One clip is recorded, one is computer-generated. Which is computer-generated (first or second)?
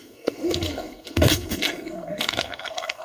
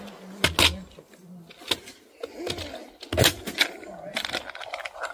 first